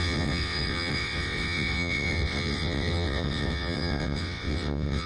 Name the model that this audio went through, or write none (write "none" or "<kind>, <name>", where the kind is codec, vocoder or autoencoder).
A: vocoder, WaveNeXt